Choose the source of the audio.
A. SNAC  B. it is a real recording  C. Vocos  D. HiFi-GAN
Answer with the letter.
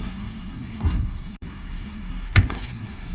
A